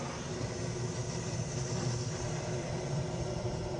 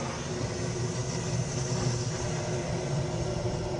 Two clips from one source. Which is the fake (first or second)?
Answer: first